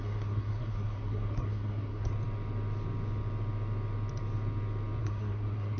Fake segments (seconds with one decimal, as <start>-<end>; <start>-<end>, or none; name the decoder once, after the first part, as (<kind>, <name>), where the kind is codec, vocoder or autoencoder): 0.0-2.1 (codec, SNAC); 5.0-5.8